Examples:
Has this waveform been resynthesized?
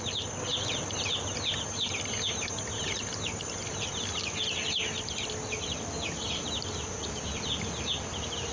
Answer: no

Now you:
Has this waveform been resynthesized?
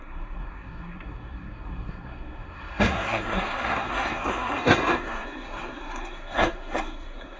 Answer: yes